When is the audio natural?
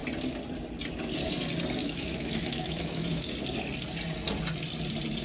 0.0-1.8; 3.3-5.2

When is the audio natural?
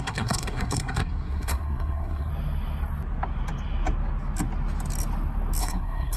2.3-5.6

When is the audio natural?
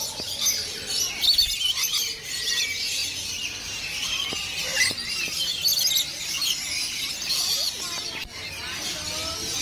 0.0-9.6